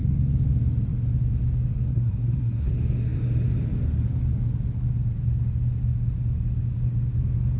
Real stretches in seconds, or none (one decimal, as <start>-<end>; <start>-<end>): 0.0-1.9; 2.7-7.6